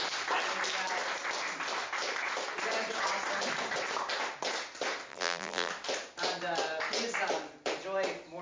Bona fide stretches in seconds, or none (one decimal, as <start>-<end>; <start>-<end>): 0.0-5.1; 5.7-8.4